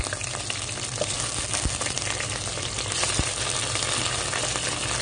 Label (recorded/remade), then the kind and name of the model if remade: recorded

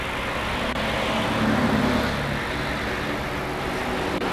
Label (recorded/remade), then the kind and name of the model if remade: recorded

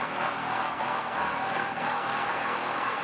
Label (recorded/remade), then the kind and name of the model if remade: remade, codec, SNAC